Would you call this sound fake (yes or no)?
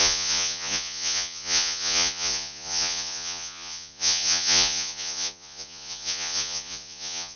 yes